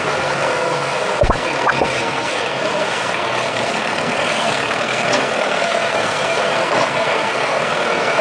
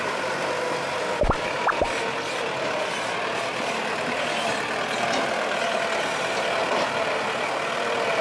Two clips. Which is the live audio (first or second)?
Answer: second